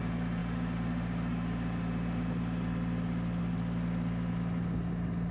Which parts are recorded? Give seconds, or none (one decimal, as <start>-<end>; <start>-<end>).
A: 0.0-5.3